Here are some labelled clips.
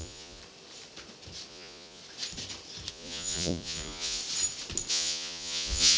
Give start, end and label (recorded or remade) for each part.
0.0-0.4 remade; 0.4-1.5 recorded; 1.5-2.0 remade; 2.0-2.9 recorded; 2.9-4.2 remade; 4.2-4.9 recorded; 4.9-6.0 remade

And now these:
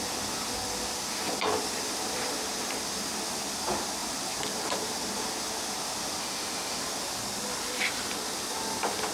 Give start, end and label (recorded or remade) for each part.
0.0-6.2 recorded; 6.2-6.8 remade; 6.8-9.1 recorded

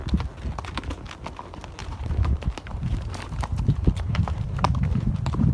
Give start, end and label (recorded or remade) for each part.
0.0-1.8 recorded; 1.8-5.1 remade; 5.1-5.5 recorded

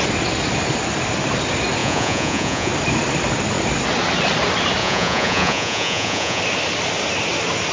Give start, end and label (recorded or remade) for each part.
0.0-1.8 recorded; 1.8-2.7 remade; 2.7-4.8 recorded; 4.8-6.4 remade; 6.4-7.7 recorded

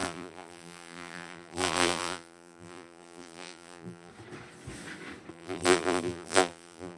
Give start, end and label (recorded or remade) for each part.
0.0-4.1 remade; 4.1-5.3 recorded; 5.3-7.0 remade

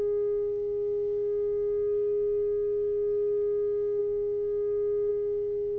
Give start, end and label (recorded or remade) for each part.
0.0-5.8 recorded

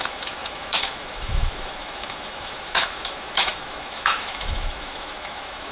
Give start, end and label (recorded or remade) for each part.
0.0-5.7 remade